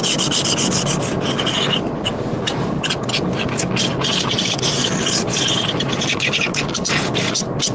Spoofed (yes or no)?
no